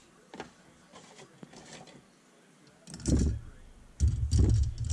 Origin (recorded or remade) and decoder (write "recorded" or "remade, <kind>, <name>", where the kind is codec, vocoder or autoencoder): recorded